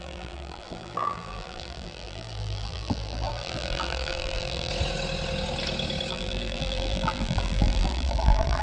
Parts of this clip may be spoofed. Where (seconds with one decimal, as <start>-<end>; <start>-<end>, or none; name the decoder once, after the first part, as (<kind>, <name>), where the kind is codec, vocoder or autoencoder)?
0.0-4.7 (vocoder, BigVGAN v2); 6.1-8.6